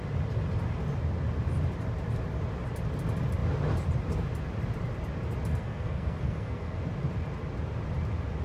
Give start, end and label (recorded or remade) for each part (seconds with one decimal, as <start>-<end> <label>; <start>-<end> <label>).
0.0-5.5 recorded; 5.5-6.8 remade; 6.8-8.4 recorded

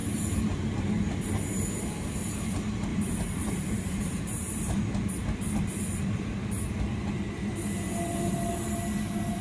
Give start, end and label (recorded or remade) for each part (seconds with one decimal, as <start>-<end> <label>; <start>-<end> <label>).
0.0-2.9 recorded; 2.9-4.8 remade; 4.8-9.4 recorded